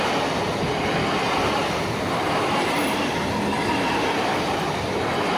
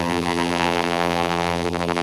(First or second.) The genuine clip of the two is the first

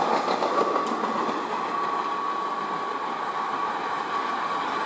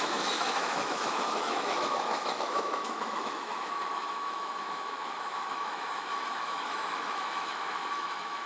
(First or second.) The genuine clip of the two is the first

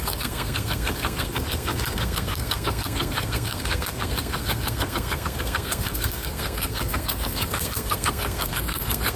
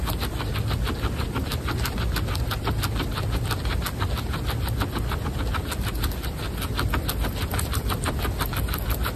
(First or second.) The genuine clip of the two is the second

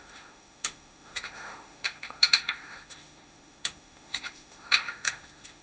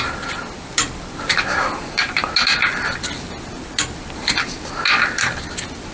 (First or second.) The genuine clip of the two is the second